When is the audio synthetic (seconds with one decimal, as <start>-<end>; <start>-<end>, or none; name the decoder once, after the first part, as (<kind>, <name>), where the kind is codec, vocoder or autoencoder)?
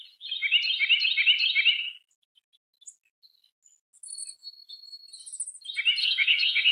6.0-6.7 (codec, SNAC)